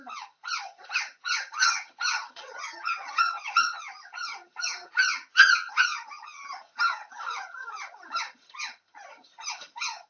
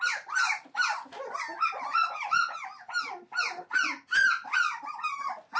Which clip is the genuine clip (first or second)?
second